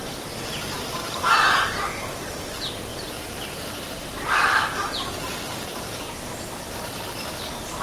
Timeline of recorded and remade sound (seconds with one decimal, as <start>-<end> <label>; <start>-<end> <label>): 0.0-2.9 remade; 2.9-3.4 recorded; 3.4-7.8 remade